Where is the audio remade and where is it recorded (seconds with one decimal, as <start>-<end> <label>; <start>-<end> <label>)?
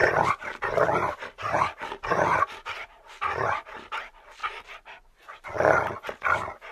0.0-4.0 remade; 4.0-6.7 recorded